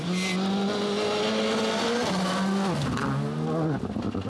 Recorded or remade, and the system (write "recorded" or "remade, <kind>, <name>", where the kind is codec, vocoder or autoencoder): recorded